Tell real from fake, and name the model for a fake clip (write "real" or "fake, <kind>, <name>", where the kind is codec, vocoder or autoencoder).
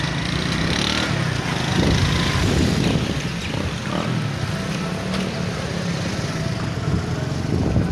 real